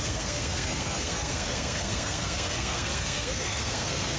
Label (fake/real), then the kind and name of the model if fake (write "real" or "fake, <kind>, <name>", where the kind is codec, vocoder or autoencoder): fake, codec, SNAC